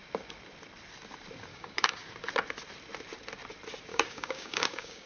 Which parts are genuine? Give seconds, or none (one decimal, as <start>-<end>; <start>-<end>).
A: 0.0-1.5; 2.0-3.9